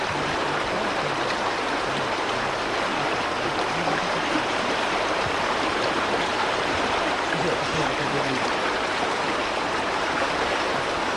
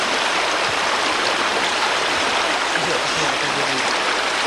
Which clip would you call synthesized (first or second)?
first